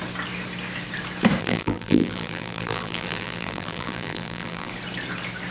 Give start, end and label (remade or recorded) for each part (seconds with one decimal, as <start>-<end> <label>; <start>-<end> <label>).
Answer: 0.0-1.4 recorded; 1.4-4.7 remade; 4.7-5.5 recorded

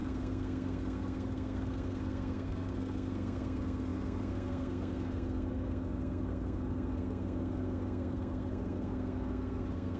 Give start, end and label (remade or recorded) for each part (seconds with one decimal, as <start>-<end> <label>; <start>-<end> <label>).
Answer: 0.0-10.0 remade

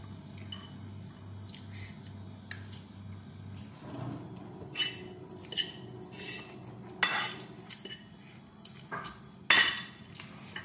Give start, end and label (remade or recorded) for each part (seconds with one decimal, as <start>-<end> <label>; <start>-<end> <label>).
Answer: 0.0-10.6 recorded

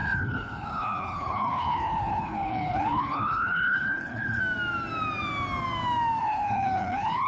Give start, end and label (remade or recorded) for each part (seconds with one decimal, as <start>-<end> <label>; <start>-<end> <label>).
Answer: 0.0-4.4 remade; 4.4-6.2 recorded; 6.2-7.3 remade